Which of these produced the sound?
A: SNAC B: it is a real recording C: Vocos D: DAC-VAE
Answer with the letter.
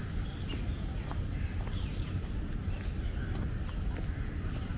B